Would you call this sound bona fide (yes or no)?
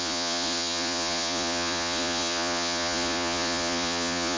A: no